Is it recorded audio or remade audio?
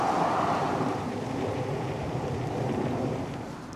remade